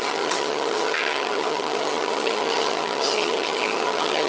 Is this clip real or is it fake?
fake